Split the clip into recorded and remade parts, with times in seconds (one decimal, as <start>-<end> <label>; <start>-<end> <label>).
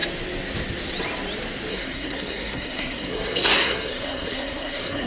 0.0-1.7 recorded; 1.7-5.1 remade